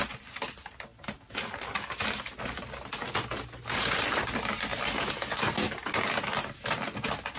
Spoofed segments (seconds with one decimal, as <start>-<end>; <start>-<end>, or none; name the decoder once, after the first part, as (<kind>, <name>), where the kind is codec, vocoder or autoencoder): none